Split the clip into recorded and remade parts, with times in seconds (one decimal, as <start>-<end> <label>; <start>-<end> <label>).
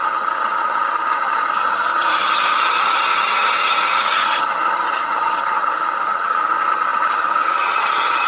0.0-8.3 remade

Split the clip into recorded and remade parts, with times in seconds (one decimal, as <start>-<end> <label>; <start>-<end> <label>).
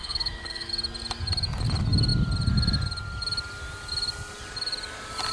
0.0-0.7 remade; 0.7-5.3 recorded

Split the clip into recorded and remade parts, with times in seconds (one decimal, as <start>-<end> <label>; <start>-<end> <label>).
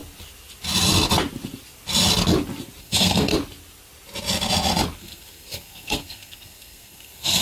0.0-2.8 recorded; 2.8-3.3 remade; 3.3-5.0 recorded; 5.0-7.4 remade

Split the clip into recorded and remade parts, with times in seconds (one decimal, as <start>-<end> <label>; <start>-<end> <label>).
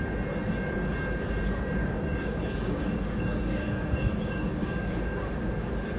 0.0-1.8 recorded; 1.8-5.4 remade; 5.4-6.0 recorded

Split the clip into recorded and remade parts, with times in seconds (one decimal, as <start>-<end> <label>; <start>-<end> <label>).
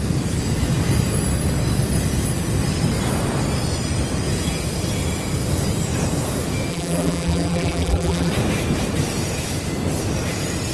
0.0-6.7 recorded; 6.7-8.3 remade; 8.3-10.7 recorded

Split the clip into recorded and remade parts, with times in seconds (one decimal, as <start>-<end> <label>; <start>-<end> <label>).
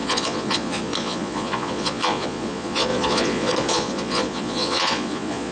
0.0-5.5 remade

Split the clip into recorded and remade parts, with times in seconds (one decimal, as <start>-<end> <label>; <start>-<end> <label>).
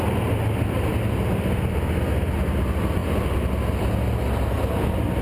0.0-5.2 recorded